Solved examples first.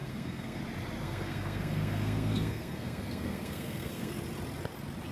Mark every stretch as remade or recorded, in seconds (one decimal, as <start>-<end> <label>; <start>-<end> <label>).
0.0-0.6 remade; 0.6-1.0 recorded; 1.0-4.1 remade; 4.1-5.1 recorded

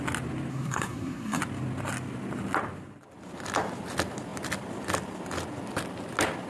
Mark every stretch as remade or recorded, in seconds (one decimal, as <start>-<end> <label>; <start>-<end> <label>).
0.0-0.5 recorded; 0.5-1.4 remade; 1.4-6.5 recorded

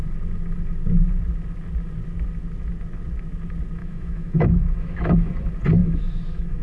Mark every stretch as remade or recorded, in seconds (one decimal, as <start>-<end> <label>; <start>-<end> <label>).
0.0-3.8 recorded; 3.8-5.3 remade; 5.3-5.8 recorded; 5.8-6.6 remade

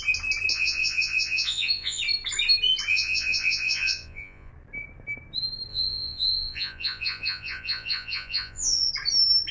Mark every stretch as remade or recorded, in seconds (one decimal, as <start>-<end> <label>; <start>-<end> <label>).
0.0-0.5 recorded; 0.5-2.0 remade; 2.0-2.9 recorded; 2.9-4.5 remade; 4.5-5.7 recorded; 5.7-8.9 remade; 8.9-9.5 recorded

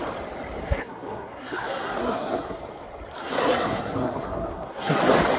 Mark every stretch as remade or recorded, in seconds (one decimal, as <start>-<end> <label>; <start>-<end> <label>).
0.0-0.6 recorded; 0.6-2.6 remade; 2.6-3.2 recorded; 3.2-5.0 remade; 5.0-5.4 recorded

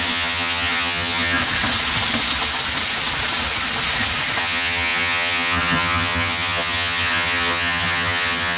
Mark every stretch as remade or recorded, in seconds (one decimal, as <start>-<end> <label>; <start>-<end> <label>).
0.0-1.4 remade; 1.4-4.4 recorded; 4.4-8.6 remade

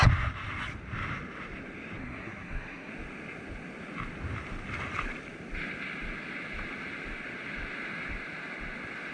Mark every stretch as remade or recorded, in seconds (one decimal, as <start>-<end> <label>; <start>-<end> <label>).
0.0-2.0 recorded; 2.0-2.9 remade; 2.9-9.1 recorded

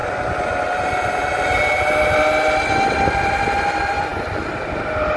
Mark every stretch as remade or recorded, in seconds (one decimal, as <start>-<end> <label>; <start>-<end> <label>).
0.0-5.2 recorded